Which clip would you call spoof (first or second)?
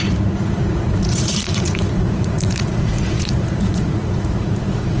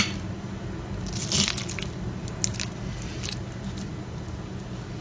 first